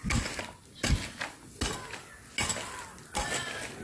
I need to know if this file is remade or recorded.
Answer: recorded